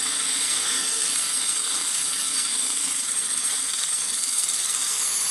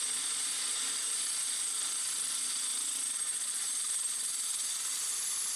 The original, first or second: second